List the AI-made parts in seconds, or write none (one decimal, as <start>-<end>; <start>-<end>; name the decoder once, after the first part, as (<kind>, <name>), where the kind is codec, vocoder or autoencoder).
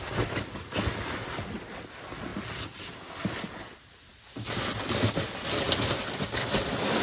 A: none